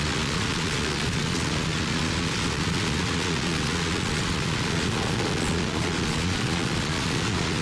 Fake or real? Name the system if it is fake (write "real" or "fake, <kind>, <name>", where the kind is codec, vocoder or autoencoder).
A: fake, vocoder, Vocos